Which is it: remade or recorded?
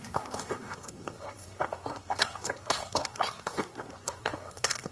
remade